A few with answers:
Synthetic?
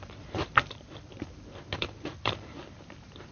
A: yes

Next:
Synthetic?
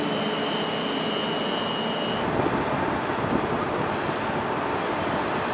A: no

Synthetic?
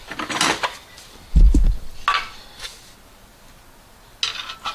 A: no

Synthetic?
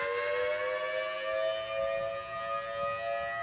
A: no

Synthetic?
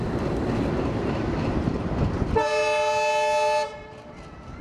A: no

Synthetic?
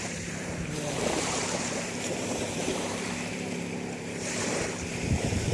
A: yes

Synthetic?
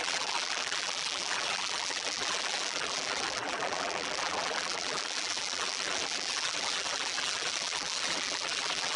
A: yes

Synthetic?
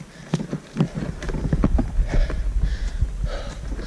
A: no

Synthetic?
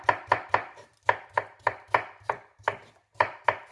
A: yes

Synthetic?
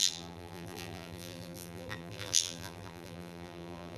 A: yes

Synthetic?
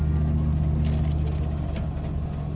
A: no